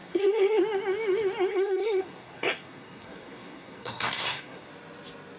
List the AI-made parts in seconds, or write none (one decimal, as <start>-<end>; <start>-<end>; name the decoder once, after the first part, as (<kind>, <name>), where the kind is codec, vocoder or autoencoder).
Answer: 0.0-0.6 (codec, SNAC); 1.5-4.7